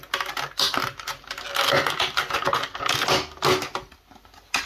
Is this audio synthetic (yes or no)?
no